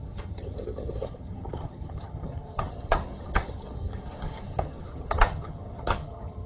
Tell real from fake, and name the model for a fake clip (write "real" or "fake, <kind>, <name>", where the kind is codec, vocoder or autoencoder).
fake, vocoder, HiFi-GAN